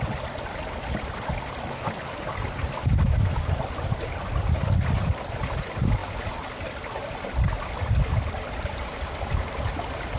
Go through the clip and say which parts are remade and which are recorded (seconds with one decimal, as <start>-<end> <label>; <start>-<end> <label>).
0.0-10.2 recorded